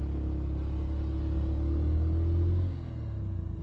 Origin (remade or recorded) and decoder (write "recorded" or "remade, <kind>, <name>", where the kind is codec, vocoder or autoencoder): recorded